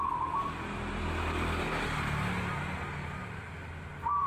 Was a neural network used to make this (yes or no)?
no